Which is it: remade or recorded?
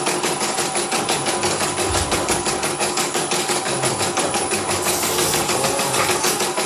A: remade